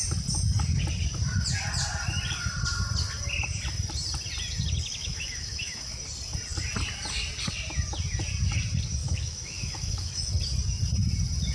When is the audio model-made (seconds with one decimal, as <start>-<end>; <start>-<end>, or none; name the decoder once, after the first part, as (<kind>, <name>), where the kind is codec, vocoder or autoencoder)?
5.0-6.0 (autoencoder, DAC-VAE); 9.0-10.3